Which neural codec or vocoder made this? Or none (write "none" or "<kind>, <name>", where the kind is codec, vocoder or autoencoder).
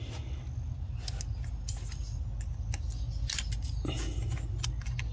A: none